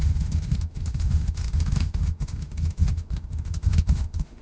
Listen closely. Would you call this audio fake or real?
fake